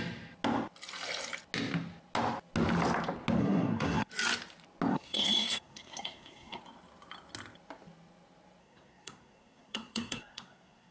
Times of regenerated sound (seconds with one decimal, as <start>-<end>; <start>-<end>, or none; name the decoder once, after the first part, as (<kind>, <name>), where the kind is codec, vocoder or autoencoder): 3.4-4.1 (codec, SNAC); 4.9-6.6; 8.6-10.9